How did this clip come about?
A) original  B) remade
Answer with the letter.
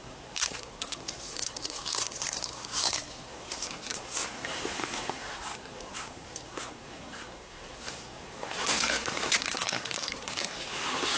B